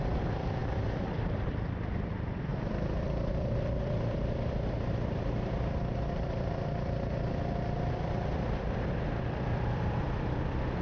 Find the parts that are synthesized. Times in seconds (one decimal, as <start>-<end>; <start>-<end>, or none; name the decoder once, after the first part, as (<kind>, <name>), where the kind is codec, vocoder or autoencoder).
0.0-2.5 (vocoder, BigVGAN v2); 3.0-10.8